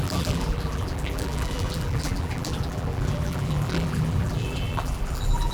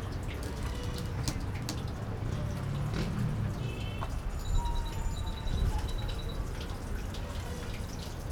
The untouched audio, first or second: second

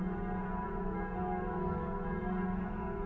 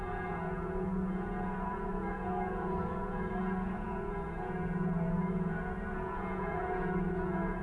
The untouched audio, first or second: first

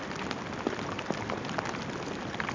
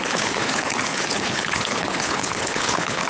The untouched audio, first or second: first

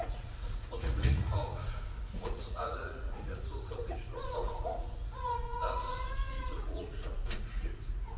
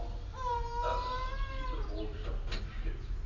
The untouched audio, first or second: second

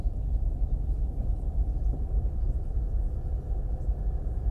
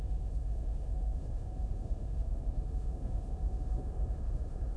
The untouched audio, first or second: first